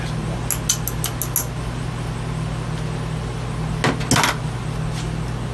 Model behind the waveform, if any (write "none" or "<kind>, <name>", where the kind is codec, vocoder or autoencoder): none